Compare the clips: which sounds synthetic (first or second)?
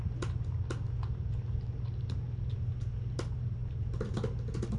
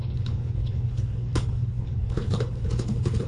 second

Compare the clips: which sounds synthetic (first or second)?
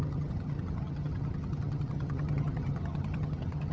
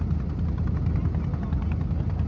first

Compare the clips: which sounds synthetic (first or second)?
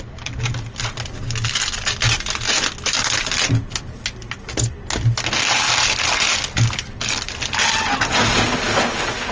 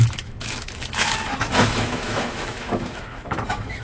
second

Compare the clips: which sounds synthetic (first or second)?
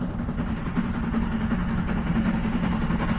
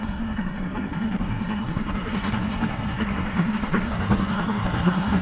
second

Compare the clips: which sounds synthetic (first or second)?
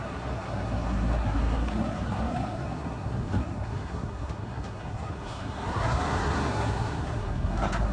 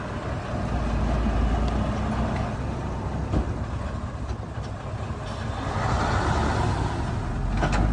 first